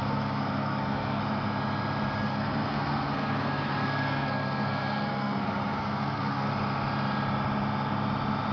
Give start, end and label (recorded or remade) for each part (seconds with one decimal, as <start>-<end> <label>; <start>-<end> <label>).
0.0-1.2 remade; 1.2-2.3 recorded; 2.3-6.5 remade; 6.5-8.5 recorded